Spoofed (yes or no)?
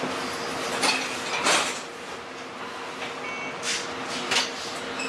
no